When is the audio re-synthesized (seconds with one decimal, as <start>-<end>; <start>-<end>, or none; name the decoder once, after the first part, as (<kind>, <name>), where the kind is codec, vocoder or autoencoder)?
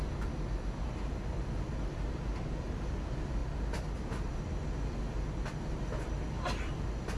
none